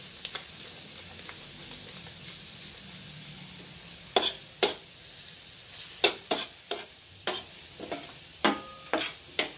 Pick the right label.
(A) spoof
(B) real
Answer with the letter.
B